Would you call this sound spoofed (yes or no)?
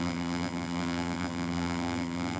yes